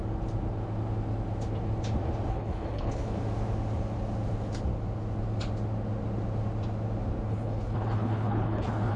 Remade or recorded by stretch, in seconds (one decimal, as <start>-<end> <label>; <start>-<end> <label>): 0.0-2.3 recorded; 2.3-3.2 remade; 3.2-7.3 recorded; 7.3-9.0 remade